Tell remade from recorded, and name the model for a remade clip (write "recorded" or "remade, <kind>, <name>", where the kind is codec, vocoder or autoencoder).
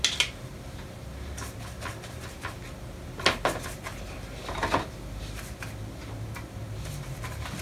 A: recorded